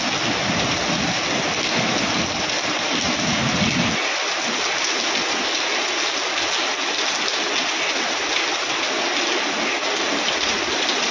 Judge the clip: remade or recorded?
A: recorded